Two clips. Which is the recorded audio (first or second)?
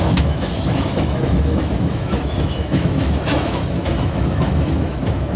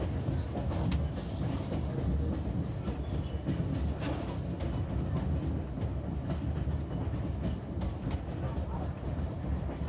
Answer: second